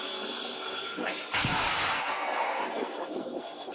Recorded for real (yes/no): no